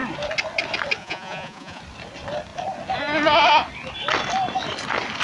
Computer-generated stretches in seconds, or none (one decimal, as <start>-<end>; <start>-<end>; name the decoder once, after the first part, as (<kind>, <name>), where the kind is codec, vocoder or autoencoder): 1.0-1.8 (vocoder, Vocos)